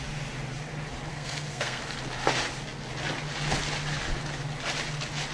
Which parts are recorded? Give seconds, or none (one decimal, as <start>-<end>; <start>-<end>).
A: 0.0-1.1; 1.8-5.3